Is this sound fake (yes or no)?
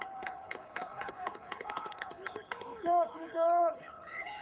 yes